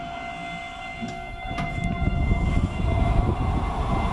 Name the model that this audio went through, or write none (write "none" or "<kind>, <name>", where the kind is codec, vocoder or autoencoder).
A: none